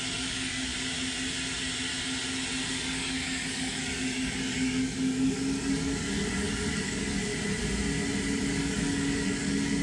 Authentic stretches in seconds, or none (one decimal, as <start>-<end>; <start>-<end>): 0.7-2.7; 7.3-8.4